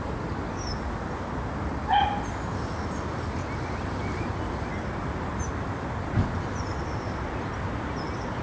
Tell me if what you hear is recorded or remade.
recorded